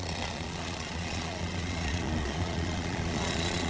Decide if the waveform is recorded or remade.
remade